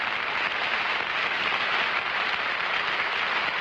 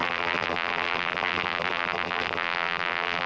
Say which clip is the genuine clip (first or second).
first